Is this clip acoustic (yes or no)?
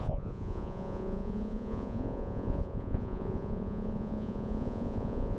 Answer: no